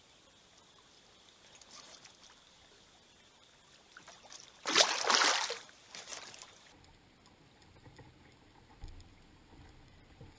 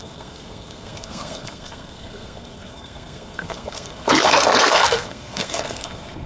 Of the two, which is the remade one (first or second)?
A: second